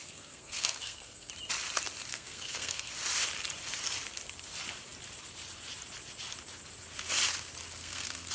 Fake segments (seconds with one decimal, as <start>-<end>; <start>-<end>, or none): 0.0-1.3; 2.1-2.9; 7.8-8.3